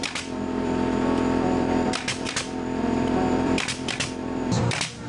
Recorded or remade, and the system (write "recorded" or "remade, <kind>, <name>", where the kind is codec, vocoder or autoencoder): remade, vocoder, BigVGAN v2